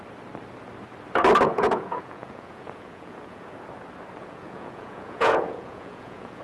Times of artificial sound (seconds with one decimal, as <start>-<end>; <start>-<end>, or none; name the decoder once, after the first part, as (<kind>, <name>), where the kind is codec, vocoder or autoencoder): 1.5-3.5 (vocoder, Vocos); 4.2-6.4